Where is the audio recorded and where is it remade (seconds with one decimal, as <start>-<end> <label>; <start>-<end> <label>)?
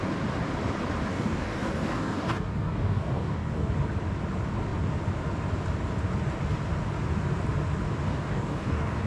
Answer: 0.0-1.1 recorded; 1.1-3.7 remade; 3.7-7.9 recorded; 7.9-9.1 remade